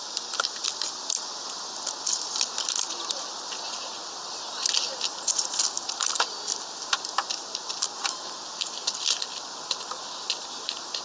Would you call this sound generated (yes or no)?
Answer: no